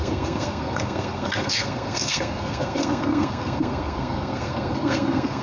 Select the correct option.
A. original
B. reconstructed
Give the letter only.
B